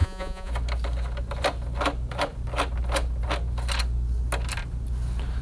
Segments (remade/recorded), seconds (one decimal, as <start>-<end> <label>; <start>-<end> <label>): 0.0-0.5 remade; 0.5-5.4 recorded